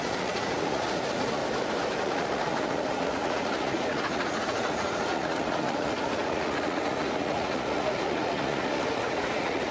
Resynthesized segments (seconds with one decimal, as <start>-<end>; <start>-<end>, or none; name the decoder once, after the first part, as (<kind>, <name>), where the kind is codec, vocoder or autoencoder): 0.0-1.4 (vocoder, Vocos); 2.0-9.7